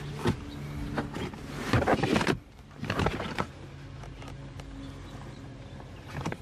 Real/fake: fake